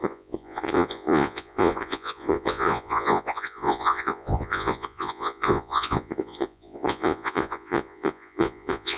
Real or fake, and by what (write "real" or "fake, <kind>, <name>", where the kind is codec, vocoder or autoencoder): fake, vocoder, Vocos